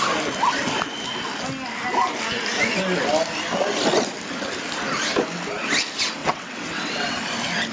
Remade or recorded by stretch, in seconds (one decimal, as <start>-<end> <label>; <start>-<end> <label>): 0.0-6.2 recorded; 6.2-7.2 remade; 7.2-7.7 recorded